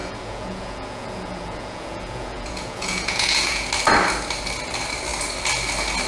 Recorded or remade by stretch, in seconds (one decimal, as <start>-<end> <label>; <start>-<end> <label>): 0.0-3.7 remade; 3.7-6.1 recorded